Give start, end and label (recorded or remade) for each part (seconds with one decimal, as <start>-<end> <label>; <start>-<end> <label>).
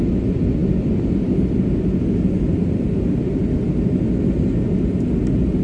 0.0-5.6 recorded